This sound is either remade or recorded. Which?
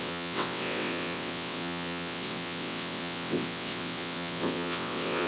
remade